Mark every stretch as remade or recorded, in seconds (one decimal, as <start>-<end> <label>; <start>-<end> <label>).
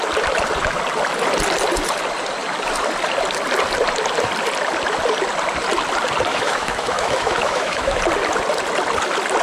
0.0-6.3 recorded; 6.3-8.0 remade; 8.0-9.4 recorded